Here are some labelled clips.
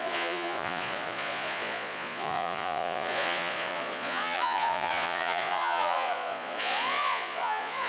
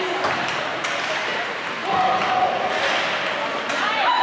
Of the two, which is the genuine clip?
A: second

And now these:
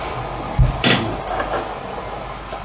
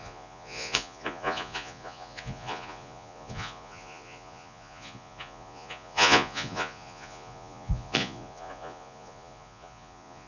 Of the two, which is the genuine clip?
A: first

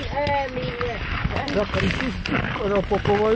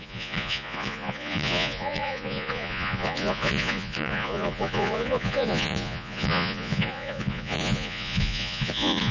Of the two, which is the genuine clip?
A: first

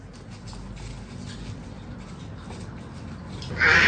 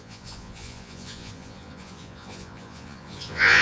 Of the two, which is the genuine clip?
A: first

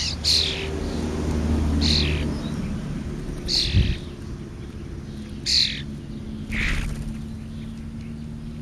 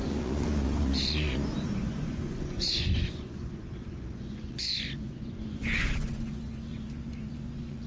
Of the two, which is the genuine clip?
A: first